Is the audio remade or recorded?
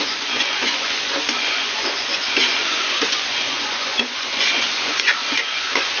remade